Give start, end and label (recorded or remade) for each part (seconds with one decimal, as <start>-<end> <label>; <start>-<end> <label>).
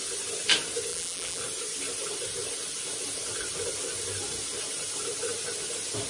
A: 0.0-0.9 recorded; 0.9-1.4 remade; 1.4-6.1 recorded